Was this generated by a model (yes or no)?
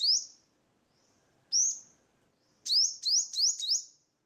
no